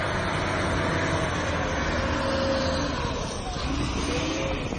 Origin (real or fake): real